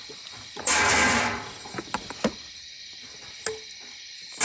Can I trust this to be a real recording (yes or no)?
yes